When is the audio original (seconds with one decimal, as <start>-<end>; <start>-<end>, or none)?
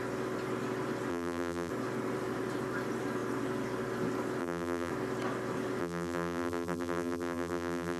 0.0-1.1; 1.7-4.4; 4.9-5.8